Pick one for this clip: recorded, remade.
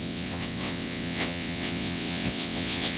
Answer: remade